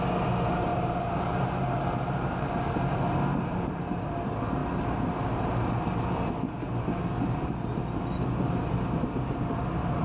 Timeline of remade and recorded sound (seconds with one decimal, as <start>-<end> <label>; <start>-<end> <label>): 0.0-0.7 recorded; 0.7-4.1 remade; 4.1-10.0 recorded